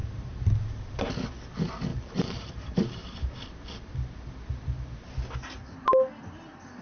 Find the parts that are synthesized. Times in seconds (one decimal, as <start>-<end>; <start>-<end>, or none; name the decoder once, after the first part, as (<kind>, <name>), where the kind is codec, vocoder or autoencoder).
0.0-0.9 (vocoder, BigVGAN v2); 1.9-3.3